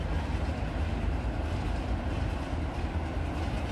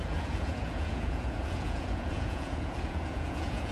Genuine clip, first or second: first